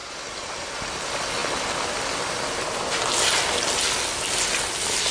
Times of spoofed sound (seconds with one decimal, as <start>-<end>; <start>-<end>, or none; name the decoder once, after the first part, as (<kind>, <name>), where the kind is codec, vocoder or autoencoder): none